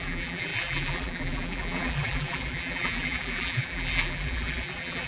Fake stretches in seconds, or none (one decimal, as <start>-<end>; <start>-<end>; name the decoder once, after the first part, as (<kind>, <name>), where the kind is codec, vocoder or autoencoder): 0.0-5.1 (vocoder, BigVGAN v2)